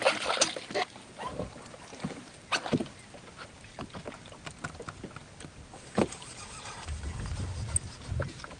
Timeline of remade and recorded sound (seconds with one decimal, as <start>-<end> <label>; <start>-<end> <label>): 0.0-8.6 recorded